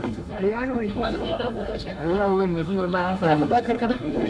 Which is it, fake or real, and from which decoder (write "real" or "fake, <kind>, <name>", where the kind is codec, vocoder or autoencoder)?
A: fake, codec, SNAC